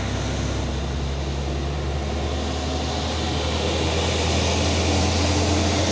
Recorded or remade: recorded